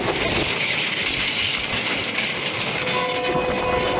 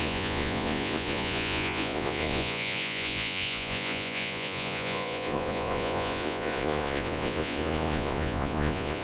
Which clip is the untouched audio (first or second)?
first